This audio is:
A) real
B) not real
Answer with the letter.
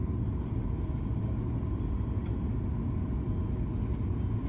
A